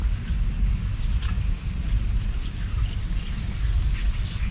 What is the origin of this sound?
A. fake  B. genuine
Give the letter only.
B